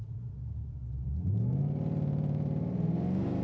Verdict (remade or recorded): remade